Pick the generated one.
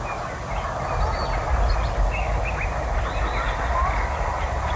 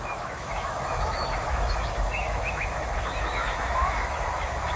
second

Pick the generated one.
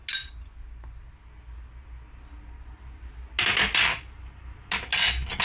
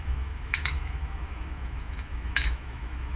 second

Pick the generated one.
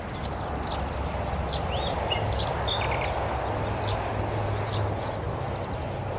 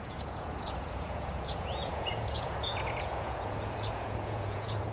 second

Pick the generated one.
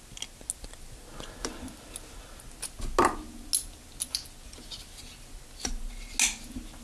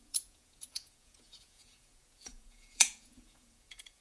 second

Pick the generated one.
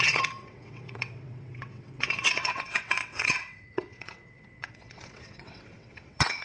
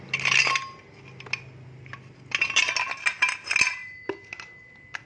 first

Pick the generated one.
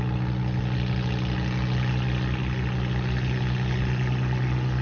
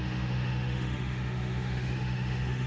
second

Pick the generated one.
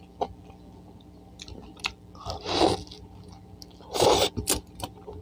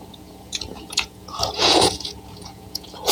second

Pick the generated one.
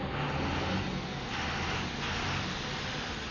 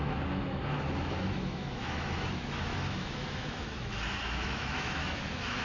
second